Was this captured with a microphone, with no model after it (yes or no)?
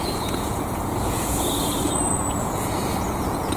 no